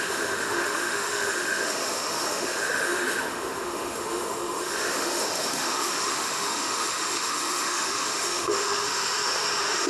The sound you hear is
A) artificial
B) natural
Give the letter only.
A